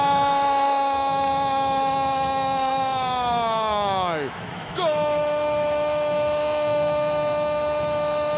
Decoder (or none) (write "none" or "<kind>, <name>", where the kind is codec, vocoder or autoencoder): autoencoder, DAC-VAE